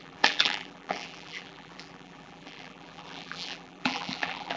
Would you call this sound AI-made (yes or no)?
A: yes